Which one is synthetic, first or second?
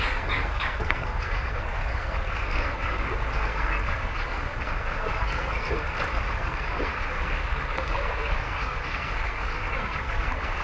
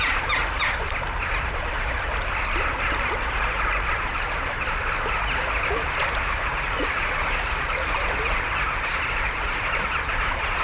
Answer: first